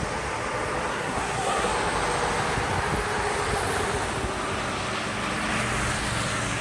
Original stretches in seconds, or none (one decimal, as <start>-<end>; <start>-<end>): 0.0-0.9; 1.7-6.6